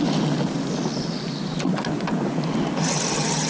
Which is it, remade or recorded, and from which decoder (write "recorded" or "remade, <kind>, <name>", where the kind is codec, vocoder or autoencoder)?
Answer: recorded